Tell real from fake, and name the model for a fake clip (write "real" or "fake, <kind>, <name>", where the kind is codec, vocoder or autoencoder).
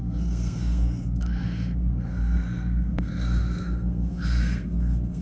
fake, codec, SNAC